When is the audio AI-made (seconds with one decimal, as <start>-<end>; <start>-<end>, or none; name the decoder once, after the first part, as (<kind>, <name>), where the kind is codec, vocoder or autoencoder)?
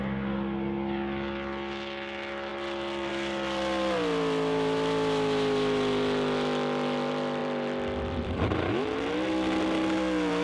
7.4-8.7 (vocoder, BigVGAN v2)